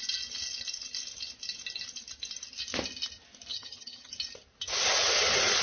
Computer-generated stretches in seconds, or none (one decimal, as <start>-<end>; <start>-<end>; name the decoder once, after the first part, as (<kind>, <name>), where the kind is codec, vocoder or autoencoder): 3.5-4.1 (vocoder, HiFi-GAN)